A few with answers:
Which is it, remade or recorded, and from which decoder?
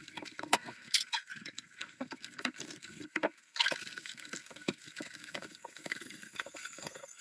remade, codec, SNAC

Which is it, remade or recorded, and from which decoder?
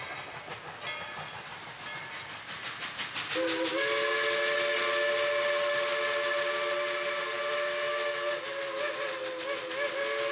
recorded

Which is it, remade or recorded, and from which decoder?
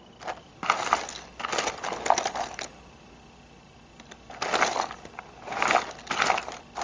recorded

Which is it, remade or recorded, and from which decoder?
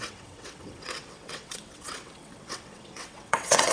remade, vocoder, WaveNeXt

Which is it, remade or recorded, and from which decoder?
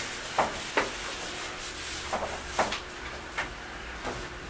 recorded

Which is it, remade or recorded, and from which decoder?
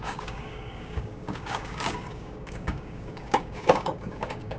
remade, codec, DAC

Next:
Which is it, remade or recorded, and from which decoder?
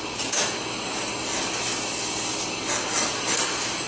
recorded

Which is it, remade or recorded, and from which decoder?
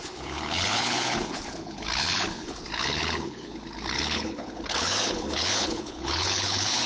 remade, codec, HILCodec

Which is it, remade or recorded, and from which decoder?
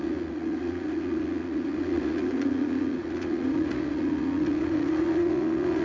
remade, vocoder, Vocos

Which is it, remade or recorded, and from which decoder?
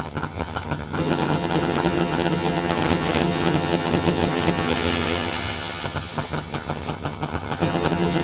remade, vocoder, HiFi-GAN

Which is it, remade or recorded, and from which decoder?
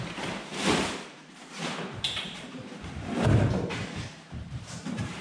remade, vocoder, BigVGAN v2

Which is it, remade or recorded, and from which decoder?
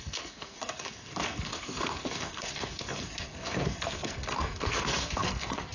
remade, codec, SNAC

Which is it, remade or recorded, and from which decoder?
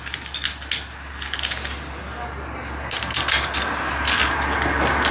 recorded